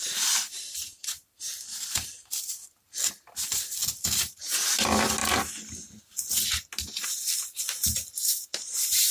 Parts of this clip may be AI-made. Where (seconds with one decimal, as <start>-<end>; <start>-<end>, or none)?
none